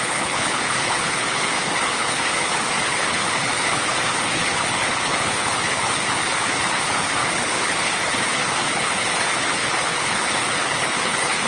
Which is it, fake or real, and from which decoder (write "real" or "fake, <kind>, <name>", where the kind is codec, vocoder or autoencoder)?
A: fake, codec, HILCodec